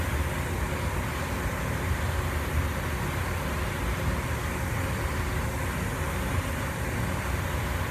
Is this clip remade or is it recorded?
recorded